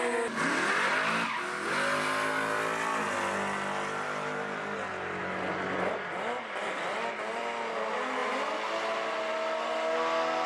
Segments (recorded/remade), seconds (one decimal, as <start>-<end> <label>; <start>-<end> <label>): 0.0-10.5 recorded